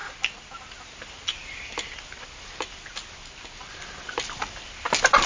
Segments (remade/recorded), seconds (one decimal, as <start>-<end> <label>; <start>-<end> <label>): 0.0-1.4 recorded; 1.4-4.6 remade; 4.6-5.3 recorded

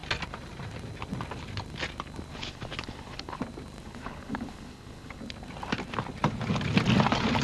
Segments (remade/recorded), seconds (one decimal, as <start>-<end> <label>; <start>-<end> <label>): 0.0-2.3 recorded; 2.3-3.4 remade; 3.4-3.8 recorded; 3.8-5.2 remade; 5.2-7.4 recorded

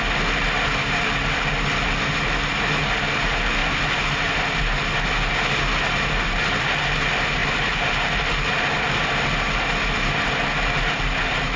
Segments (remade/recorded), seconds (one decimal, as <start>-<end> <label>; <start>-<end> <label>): 0.0-11.6 recorded

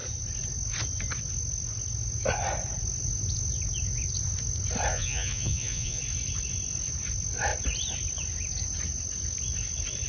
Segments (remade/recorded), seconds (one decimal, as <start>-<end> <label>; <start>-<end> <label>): 0.0-4.9 recorded; 4.9-6.0 remade; 6.0-10.1 recorded

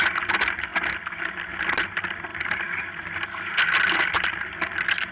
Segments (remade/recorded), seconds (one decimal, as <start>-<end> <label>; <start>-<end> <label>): 0.0-5.1 recorded

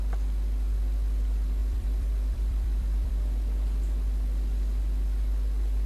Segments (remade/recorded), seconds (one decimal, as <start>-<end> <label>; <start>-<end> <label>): 0.0-1.6 recorded; 1.6-3.1 remade; 3.1-5.9 recorded